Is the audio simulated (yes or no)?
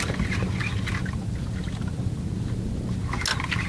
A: no